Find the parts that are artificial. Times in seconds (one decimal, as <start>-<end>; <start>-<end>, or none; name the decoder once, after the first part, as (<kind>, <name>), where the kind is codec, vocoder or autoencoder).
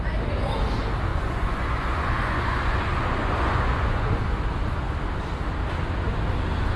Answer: 1.1-4.2 (vocoder, Vocos)